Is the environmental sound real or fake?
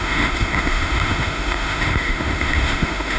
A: fake